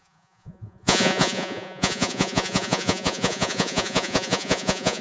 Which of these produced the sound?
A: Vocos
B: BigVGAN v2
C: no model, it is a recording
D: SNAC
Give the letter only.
A